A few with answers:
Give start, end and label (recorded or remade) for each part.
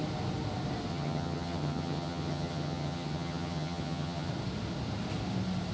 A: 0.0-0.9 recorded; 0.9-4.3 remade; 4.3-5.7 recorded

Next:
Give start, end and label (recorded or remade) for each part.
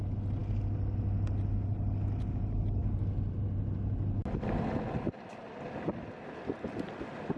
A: 0.0-7.4 recorded